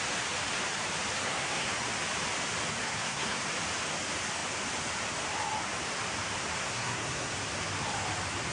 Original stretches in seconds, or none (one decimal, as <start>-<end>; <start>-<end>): 0.0-1.2; 1.7-2.8; 3.4-6.6; 7.3-8.5